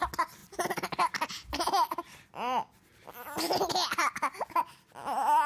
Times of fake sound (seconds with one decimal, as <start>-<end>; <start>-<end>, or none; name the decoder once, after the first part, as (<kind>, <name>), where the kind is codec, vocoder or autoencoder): none